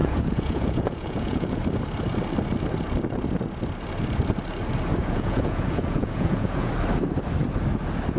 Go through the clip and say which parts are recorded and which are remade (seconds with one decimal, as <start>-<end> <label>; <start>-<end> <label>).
0.0-1.6 remade; 1.6-5.0 recorded; 5.0-6.7 remade; 6.7-8.2 recorded